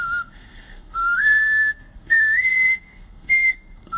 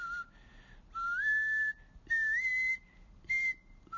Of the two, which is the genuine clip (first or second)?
second